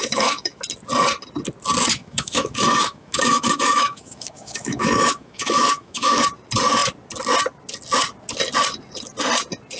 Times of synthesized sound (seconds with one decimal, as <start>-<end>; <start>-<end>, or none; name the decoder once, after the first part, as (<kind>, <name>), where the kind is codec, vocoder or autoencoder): 0.0-0.6 (autoencoder, DAC-VAE); 2.0-6.2